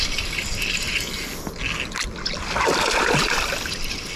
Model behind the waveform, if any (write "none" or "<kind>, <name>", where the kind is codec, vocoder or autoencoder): none